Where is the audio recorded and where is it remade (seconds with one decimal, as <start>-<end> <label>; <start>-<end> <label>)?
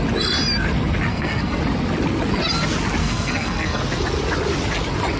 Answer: 0.0-1.1 recorded; 1.1-1.6 remade; 1.6-3.0 recorded; 3.0-3.8 remade; 3.8-5.2 recorded